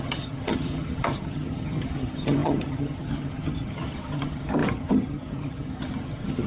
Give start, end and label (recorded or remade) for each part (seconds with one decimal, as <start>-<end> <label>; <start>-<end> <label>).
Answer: 0.0-6.5 remade